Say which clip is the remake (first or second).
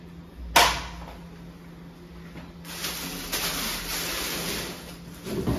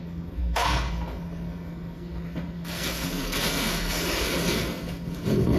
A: second